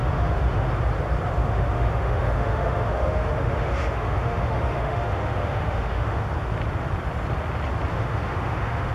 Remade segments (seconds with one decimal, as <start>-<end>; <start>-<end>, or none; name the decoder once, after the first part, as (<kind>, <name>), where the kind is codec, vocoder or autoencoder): 0.0-0.7 (autoencoder, DAC-VAE); 1.4-6.3; 7.9-8.9